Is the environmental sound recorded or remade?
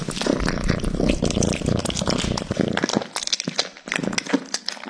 recorded